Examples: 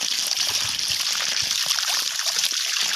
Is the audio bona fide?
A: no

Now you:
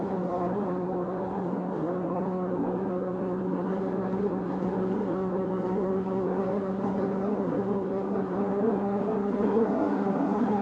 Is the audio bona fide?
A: no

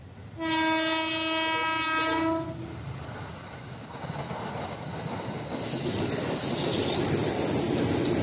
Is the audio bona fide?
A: yes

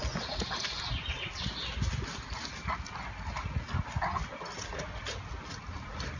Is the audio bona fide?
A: yes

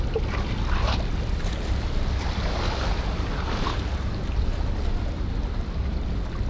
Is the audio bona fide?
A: yes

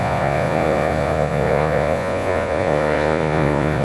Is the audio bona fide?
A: no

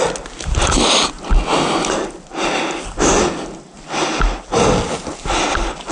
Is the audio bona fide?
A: yes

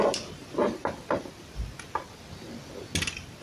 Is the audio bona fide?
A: yes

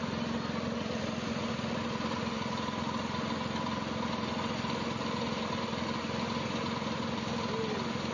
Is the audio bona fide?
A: yes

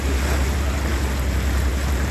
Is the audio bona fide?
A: yes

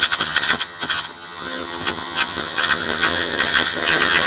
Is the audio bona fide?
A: no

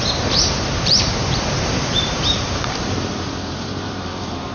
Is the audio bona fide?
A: no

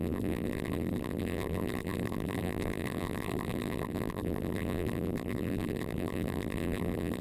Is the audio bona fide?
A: no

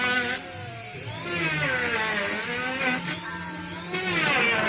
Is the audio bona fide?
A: yes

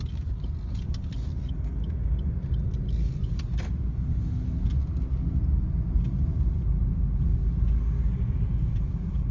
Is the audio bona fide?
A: yes